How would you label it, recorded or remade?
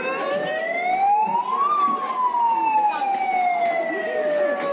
recorded